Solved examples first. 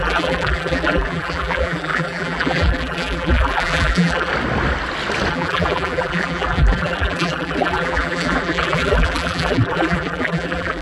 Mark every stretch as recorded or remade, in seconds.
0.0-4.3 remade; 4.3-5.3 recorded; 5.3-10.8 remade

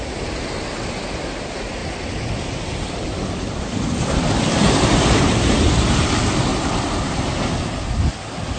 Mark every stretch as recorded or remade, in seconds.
0.0-6.5 recorded; 6.5-7.3 remade; 7.3-8.6 recorded

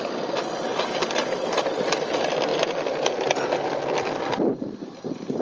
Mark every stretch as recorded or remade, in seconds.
0.0-0.7 recorded; 0.7-1.6 remade; 1.6-2.5 recorded; 2.5-3.1 remade; 3.1-4.5 recorded; 4.5-5.4 remade

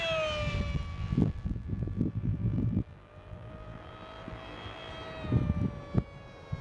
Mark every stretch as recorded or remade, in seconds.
0.0-0.9 recorded; 0.9-4.9 remade; 4.9-6.6 recorded

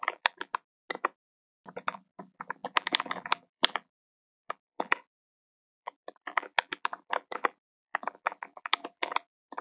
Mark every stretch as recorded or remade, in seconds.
0.0-0.5 remade; 0.5-1.7 recorded; 1.7-9.6 remade

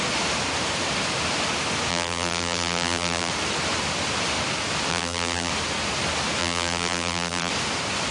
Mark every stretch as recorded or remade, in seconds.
0.0-1.9 recorded; 1.9-3.3 remade; 3.3-4.9 recorded; 4.9-5.5 remade; 5.5-6.4 recorded; 6.4-7.5 remade; 7.5-8.1 recorded

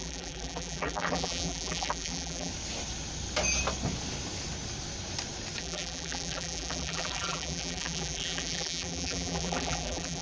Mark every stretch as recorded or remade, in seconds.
0.0-2.5 remade; 2.5-5.6 recorded; 5.6-10.2 remade

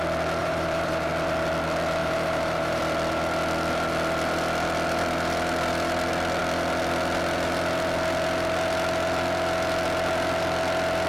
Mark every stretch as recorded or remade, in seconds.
0.0-0.4 recorded; 0.4-1.1 remade; 1.1-2.0 recorded; 2.0-2.8 remade; 2.8-11.1 recorded